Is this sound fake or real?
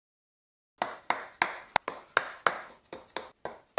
real